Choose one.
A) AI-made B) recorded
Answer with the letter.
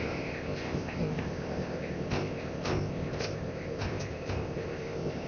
A